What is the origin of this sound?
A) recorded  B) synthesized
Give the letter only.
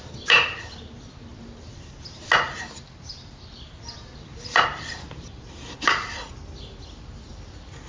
A